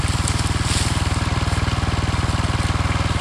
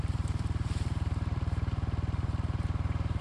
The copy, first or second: second